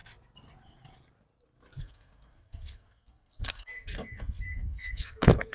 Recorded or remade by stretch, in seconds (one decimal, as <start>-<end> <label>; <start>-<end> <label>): 0.0-1.8 recorded; 1.8-5.5 remade